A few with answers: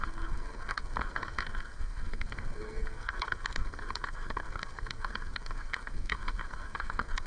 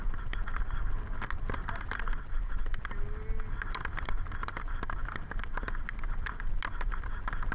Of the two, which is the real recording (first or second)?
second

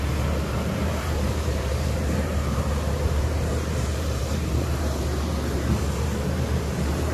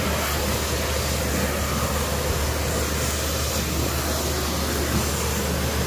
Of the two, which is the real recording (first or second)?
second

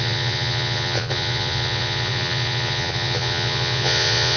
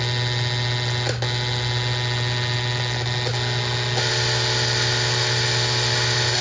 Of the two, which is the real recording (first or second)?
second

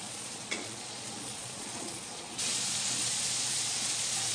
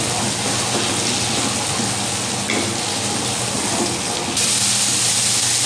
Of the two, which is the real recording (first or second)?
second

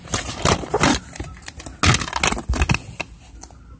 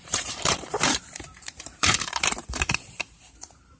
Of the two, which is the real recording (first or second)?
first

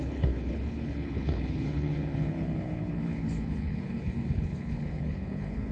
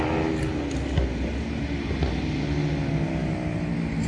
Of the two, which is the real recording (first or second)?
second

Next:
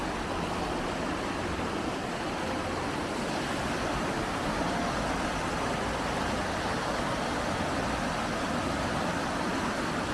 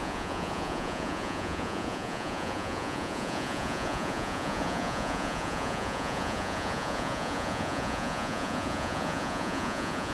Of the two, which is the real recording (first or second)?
first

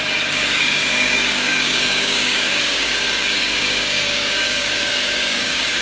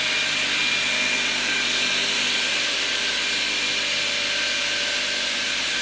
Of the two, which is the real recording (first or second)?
second